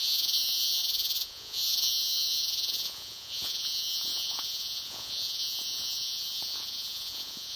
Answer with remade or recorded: remade